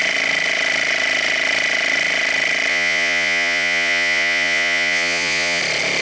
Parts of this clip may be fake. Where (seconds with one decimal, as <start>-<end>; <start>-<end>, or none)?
2.7-5.6